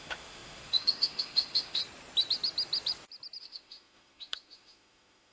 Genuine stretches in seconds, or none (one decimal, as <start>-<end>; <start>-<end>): 1.8-3.4